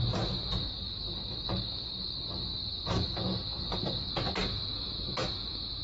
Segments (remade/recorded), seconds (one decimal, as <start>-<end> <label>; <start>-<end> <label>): 0.0-0.6 recorded; 0.6-4.1 remade; 4.1-5.8 recorded